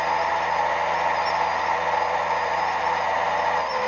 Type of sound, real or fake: real